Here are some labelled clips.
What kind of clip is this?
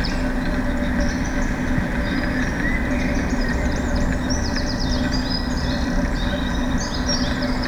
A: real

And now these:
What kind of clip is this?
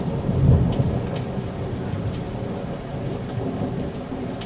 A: real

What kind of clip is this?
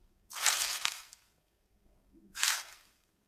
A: fake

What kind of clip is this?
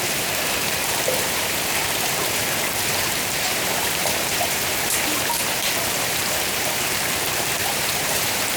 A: fake